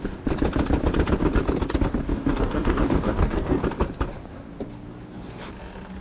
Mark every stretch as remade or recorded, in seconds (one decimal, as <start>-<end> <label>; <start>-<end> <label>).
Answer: 0.0-2.1 recorded; 2.1-3.6 remade; 3.6-6.0 recorded